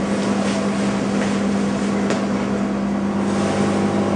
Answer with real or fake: real